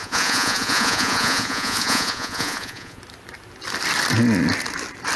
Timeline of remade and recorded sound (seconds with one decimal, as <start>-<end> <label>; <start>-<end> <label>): 0.0-3.0 remade; 3.0-5.2 recorded